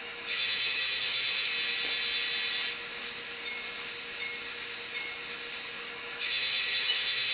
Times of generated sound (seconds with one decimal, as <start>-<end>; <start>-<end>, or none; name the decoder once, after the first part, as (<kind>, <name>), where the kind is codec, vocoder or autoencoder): 0.0-1.5 (autoencoder, DAC-VAE); 5.9-7.3